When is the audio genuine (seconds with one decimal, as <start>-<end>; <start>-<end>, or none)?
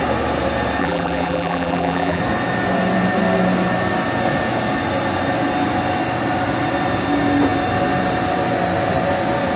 0.0-0.8; 2.2-9.6